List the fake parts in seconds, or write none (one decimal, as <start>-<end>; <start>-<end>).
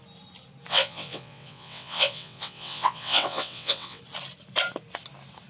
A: 0.7-4.0